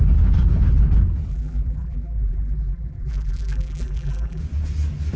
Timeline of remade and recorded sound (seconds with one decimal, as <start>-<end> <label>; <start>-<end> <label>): 0.0-1.3 recorded; 1.3-4.4 remade; 4.4-5.2 recorded